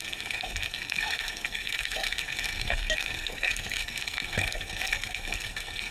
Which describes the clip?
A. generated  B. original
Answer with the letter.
A